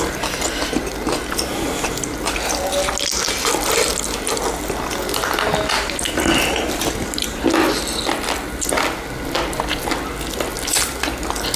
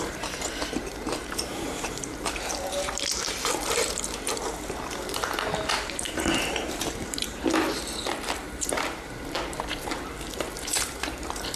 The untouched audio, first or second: first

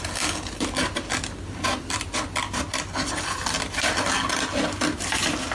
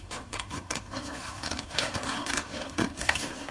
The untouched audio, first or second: first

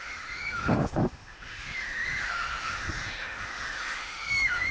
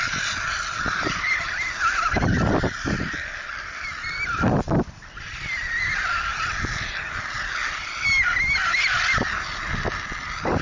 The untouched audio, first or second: second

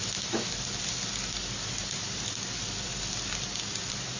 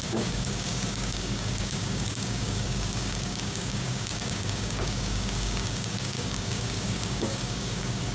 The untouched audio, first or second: first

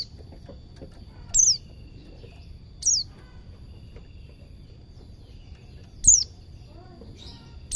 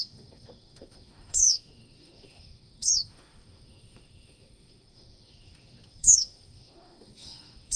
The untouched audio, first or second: first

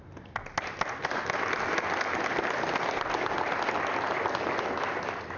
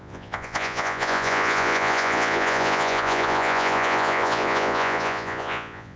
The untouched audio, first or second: first